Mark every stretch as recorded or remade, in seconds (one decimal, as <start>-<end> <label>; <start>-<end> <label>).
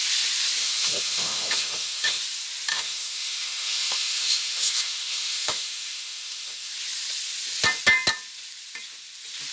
0.0-0.6 recorded; 0.6-2.2 remade; 2.2-2.7 recorded; 2.7-6.7 remade; 6.7-9.5 recorded